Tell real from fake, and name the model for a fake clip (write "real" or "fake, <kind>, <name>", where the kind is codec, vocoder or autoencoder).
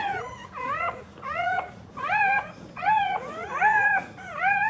fake, vocoder, Vocos